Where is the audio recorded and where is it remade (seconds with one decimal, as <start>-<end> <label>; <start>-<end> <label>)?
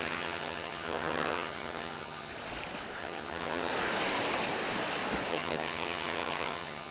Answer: 0.0-2.3 remade; 2.3-3.0 recorded; 3.0-3.7 remade; 3.7-5.3 recorded; 5.3-6.9 remade